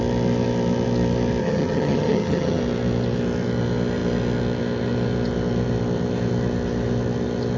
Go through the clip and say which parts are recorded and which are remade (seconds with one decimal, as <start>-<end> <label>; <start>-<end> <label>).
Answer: 0.0-1.4 recorded; 1.4-2.6 remade; 2.6-7.6 recorded